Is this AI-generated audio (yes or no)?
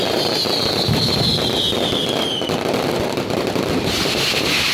yes